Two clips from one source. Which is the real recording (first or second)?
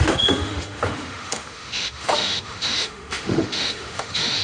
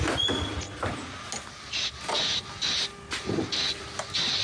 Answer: second